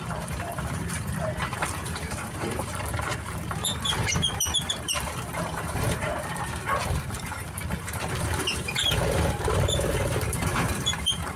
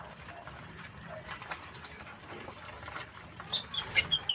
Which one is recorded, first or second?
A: second